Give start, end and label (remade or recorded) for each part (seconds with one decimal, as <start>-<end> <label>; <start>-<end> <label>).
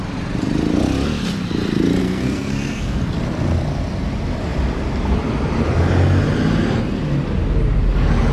0.0-2.0 recorded; 2.0-3.0 remade; 3.0-8.3 recorded